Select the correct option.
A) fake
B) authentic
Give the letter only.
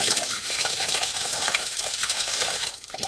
A